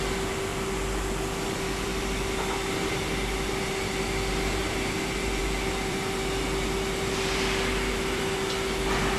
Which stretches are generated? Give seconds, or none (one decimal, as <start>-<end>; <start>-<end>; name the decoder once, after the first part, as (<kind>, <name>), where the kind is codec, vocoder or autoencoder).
0.0-4.6 (vocoder, BigVGAN v2); 5.4-9.2